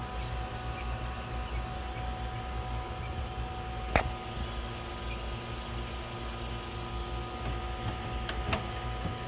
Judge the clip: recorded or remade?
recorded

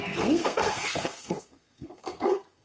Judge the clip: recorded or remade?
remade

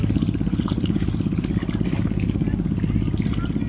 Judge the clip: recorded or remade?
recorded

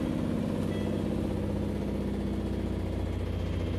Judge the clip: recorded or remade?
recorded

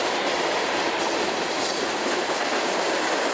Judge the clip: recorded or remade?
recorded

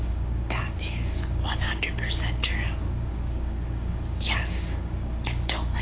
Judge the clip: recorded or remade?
remade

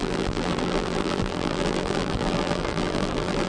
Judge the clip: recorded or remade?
remade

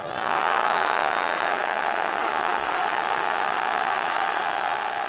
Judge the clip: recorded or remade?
remade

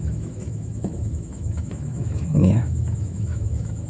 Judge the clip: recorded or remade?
remade